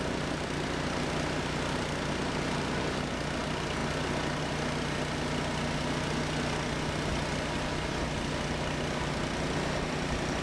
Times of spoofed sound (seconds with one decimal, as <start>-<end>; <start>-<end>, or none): none